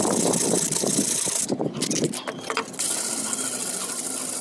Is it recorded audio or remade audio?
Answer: remade